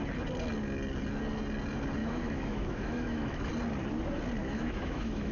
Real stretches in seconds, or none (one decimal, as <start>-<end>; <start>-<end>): 0.0-2.0; 3.5-4.4